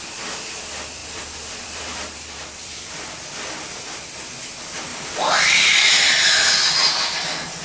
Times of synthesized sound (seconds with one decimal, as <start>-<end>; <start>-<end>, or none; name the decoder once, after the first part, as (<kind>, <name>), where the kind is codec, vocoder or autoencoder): 1.0-3.0 (vocoder, BigVGAN v2); 4.9-5.9